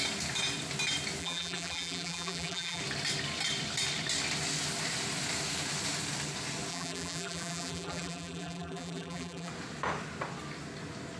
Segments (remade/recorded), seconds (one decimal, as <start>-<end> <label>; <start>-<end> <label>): 0.0-1.2 recorded; 1.2-2.8 remade; 2.8-6.7 recorded; 6.7-9.5 remade; 9.5-11.2 recorded